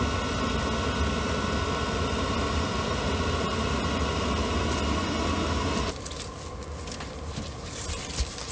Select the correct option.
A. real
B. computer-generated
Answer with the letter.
A